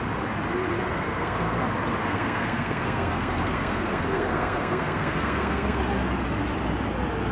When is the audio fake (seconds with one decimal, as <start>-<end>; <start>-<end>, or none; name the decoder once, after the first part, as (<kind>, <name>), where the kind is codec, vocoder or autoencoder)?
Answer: 0.9-1.6 (codec, SNAC); 2.0-5.8